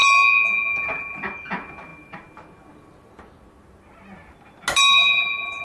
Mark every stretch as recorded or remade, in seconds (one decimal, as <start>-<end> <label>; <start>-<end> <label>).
0.0-5.6 recorded